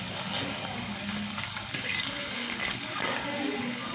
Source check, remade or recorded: remade